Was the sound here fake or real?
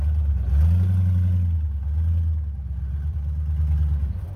real